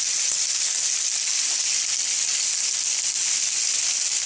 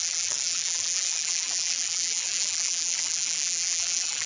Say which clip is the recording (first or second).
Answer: first